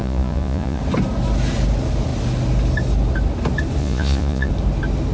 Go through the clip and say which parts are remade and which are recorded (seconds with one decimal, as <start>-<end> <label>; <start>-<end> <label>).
0.0-0.8 remade; 0.8-3.8 recorded; 3.8-4.5 remade; 4.5-5.1 recorded